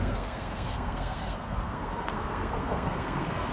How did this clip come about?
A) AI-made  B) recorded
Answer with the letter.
A